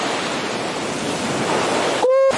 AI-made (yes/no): no